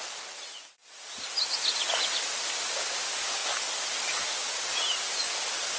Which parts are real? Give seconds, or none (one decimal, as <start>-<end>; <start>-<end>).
0.0-5.8